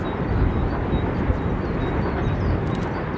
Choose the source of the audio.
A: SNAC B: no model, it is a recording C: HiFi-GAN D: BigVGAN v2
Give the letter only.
B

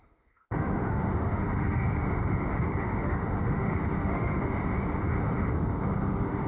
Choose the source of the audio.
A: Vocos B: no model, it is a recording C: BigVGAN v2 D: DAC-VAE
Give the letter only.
D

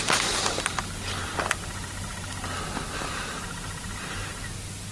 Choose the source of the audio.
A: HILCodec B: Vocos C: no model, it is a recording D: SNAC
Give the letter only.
C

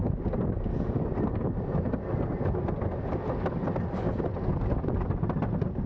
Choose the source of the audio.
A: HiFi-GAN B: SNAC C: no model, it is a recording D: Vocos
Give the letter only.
C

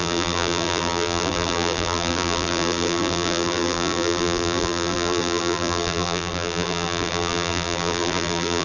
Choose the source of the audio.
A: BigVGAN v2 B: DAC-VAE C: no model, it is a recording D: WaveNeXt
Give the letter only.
A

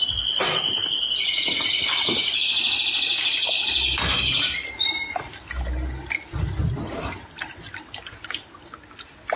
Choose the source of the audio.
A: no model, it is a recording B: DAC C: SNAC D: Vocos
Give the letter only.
A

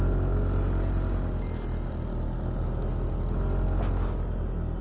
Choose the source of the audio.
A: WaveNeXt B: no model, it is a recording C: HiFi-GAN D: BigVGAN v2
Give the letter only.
B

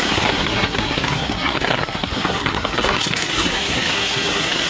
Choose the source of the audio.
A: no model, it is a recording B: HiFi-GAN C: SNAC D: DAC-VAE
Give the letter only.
C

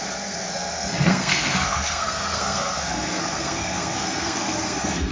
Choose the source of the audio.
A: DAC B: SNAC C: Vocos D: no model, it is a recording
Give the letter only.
B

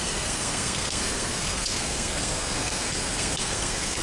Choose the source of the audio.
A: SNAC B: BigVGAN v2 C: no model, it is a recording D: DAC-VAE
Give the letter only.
A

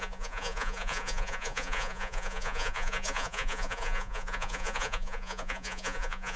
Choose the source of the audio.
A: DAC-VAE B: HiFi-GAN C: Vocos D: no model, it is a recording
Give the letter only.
C